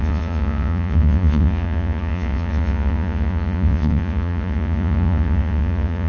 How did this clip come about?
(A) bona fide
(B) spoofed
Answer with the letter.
B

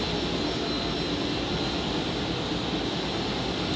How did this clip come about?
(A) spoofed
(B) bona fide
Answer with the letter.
B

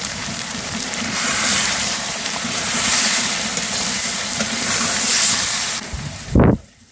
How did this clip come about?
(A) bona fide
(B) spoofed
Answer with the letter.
B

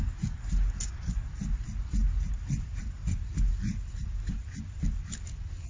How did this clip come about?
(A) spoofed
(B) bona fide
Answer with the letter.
B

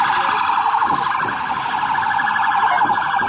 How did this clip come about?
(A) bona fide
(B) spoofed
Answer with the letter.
A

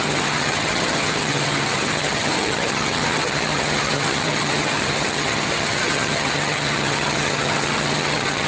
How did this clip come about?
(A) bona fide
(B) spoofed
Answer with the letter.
B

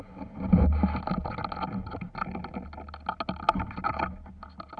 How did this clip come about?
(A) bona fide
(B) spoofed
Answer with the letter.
A